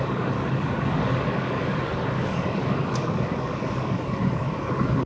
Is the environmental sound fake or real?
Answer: fake